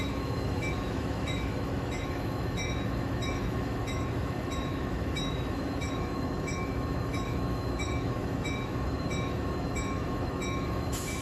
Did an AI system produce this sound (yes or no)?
yes